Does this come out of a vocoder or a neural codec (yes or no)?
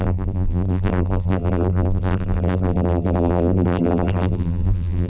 yes